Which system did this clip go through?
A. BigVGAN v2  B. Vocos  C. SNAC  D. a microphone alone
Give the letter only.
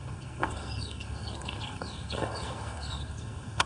C